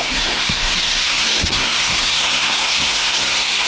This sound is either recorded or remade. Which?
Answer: remade